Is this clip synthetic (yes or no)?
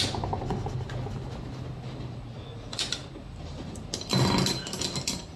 no